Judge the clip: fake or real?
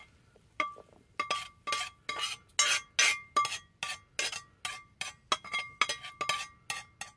real